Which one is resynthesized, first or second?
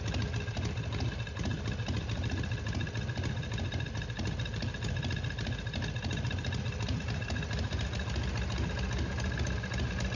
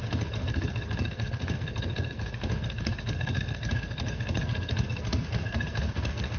second